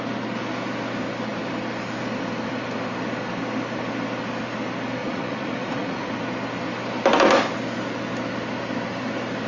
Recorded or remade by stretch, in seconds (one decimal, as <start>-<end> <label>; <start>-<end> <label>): 0.0-5.0 recorded; 5.0-6.1 remade; 6.1-9.5 recorded